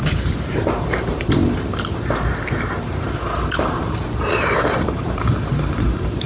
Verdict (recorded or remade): remade